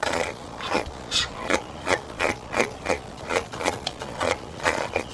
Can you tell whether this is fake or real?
fake